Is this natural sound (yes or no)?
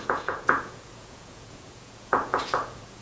no